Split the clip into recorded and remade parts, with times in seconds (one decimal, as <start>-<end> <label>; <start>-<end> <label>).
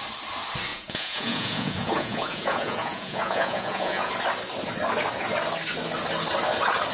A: 0.0-0.7 recorded; 0.7-4.1 remade; 4.1-6.9 recorded